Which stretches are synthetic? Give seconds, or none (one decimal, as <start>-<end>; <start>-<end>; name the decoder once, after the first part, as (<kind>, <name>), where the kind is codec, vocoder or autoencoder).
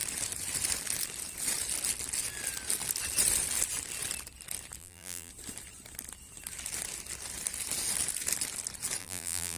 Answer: 4.8-5.3 (vocoder, BigVGAN v2); 9.0-9.6